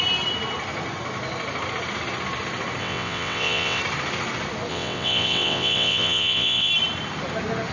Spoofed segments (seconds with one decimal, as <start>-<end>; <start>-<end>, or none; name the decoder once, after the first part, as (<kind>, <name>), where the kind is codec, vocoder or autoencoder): 2.8-3.8 (vocoder, WaveNeXt); 4.7-6.7